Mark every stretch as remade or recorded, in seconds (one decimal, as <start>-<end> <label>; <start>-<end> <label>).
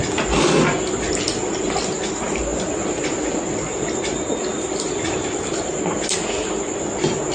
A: 0.0-7.3 recorded